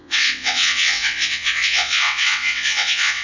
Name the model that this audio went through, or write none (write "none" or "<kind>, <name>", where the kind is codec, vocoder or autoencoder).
vocoder, WaveNeXt